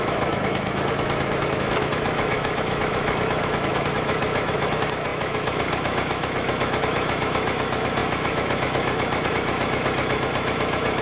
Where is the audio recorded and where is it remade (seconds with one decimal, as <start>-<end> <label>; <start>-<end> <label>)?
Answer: 0.0-11.0 remade

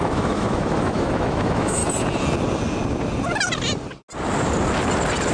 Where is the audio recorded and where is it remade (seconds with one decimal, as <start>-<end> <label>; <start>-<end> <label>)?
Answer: 0.0-1.8 remade; 1.8-5.3 recorded

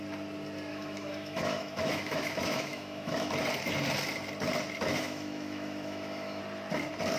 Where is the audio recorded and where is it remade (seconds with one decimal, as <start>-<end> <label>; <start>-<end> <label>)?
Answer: 0.0-0.7 recorded; 0.7-3.3 remade; 3.3-4.9 recorded; 4.9-6.4 remade; 6.4-7.2 recorded

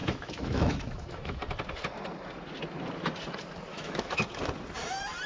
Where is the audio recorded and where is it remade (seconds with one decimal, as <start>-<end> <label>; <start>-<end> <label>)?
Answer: 0.0-1.4 remade; 1.4-3.7 recorded; 3.7-4.2 remade; 4.2-5.3 recorded

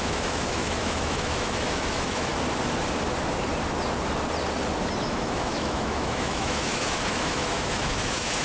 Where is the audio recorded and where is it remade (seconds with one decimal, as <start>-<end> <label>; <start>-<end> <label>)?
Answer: 0.0-2.3 remade; 2.3-5.0 recorded; 5.0-8.4 remade